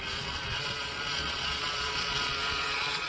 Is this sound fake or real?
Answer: fake